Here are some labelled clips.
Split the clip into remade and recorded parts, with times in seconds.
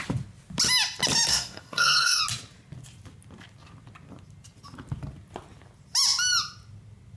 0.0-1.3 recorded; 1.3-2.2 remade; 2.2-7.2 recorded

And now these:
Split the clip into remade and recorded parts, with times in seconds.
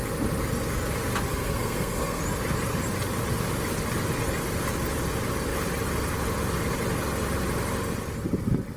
0.0-1.3 recorded; 1.3-2.2 remade; 2.2-8.8 recorded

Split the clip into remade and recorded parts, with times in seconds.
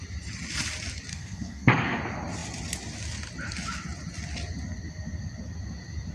0.0-1.1 recorded; 1.1-2.0 remade; 2.0-6.1 recorded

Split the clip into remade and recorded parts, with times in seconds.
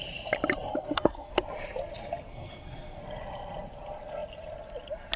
0.0-0.7 recorded; 0.7-1.3 remade; 1.3-2.3 recorded; 2.3-3.0 remade; 3.0-5.2 recorded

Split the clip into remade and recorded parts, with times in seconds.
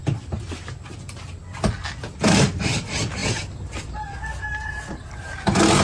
0.0-5.8 recorded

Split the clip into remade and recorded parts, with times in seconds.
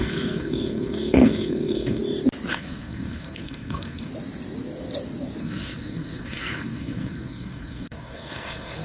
0.0-2.0 remade; 2.0-2.5 recorded; 2.5-4.1 remade; 4.1-5.4 recorded; 5.4-8.8 remade